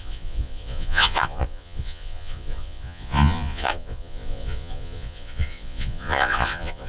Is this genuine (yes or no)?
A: no